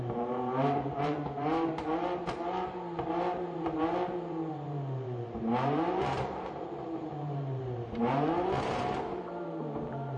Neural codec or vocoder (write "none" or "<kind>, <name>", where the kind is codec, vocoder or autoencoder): vocoder, BigVGAN v2